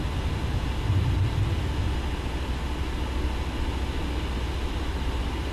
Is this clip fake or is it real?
real